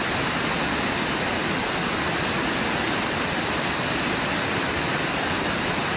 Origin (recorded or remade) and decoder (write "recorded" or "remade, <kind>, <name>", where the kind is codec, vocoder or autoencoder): recorded